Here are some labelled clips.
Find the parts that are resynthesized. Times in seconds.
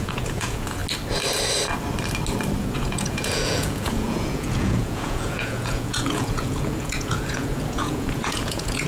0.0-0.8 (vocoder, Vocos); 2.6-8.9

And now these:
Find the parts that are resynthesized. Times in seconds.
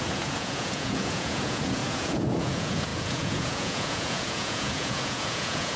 0.0-5.8 (vocoder, Vocos)